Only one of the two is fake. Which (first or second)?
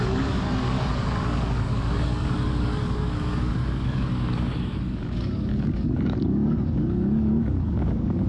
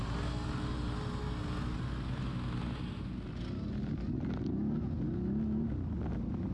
first